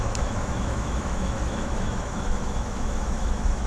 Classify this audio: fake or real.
fake